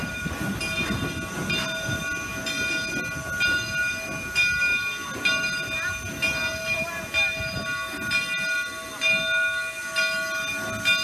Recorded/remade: recorded